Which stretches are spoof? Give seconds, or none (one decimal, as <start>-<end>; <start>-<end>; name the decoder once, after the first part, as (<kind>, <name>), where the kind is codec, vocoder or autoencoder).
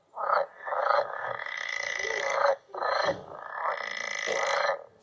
0.5-3.5 (codec, DAC)